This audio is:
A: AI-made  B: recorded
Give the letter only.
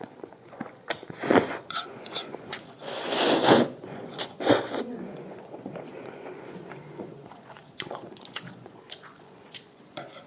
A